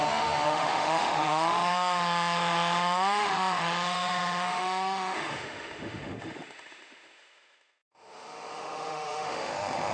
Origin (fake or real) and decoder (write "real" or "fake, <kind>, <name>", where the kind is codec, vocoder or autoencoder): fake, autoencoder, DAC-VAE